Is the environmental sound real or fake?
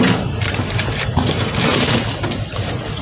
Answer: fake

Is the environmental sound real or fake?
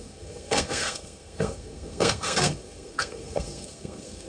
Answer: fake